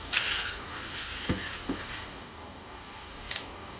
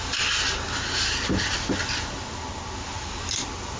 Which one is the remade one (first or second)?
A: first